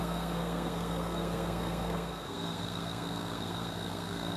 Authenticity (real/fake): fake